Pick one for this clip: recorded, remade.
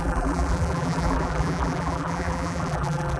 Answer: remade